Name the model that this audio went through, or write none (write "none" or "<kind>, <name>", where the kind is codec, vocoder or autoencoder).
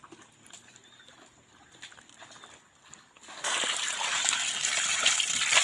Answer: none